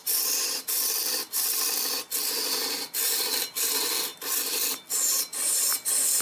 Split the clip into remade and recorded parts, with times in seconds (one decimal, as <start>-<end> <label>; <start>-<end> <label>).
0.0-6.2 recorded